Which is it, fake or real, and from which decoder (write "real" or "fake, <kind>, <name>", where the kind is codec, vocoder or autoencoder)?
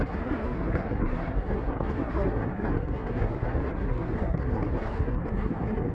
fake, codec, SNAC